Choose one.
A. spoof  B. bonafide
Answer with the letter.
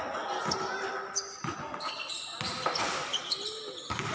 B